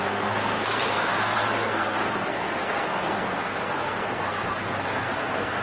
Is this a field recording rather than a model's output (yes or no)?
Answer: no